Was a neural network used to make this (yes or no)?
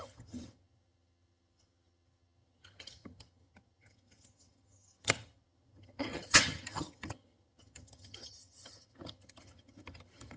yes